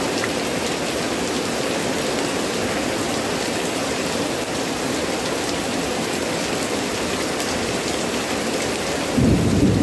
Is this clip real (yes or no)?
yes